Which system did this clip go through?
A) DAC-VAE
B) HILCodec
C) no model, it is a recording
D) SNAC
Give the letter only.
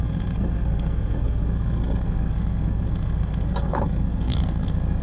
D